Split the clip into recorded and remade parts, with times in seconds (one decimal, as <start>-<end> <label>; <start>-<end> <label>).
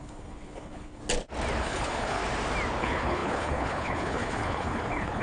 0.0-1.0 remade; 1.0-1.6 recorded; 1.6-2.2 remade; 2.2-2.8 recorded; 2.8-5.2 remade